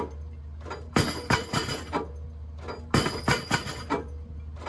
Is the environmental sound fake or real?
real